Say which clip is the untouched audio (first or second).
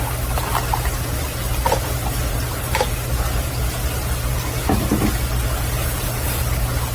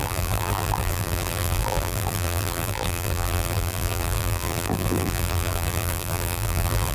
first